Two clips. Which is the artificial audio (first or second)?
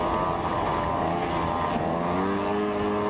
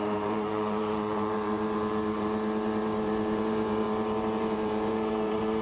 second